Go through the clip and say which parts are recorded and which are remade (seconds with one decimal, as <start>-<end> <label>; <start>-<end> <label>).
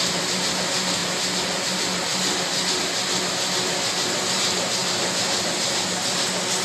0.0-6.6 recorded